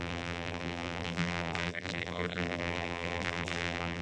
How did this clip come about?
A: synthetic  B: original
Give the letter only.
A